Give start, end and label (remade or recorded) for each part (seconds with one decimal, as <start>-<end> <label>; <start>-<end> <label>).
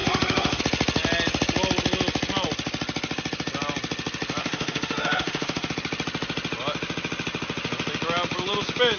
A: 0.0-0.6 remade; 0.6-4.4 recorded; 4.4-5.7 remade; 5.7-9.0 recorded